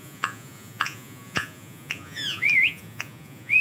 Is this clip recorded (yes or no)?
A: no